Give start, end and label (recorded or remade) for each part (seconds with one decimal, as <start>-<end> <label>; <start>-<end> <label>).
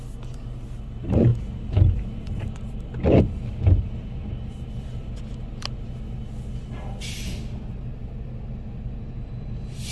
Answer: 0.0-9.9 recorded